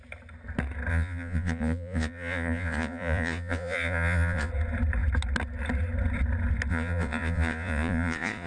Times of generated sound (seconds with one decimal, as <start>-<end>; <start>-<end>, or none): 0.9-4.5; 6.7-8.5